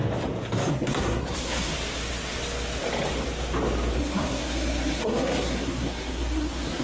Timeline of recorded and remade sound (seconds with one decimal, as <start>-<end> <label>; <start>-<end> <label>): 0.0-0.7 recorded; 0.7-1.7 remade; 1.7-4.0 recorded; 4.0-6.8 remade